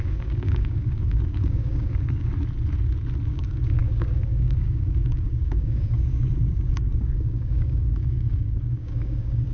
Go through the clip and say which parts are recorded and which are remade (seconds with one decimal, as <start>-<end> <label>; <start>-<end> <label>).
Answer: 0.0-2.3 remade; 2.3-3.3 recorded; 3.3-9.5 remade